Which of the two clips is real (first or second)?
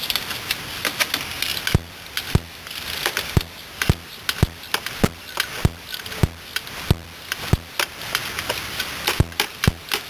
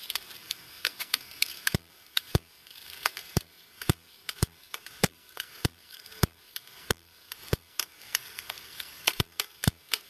first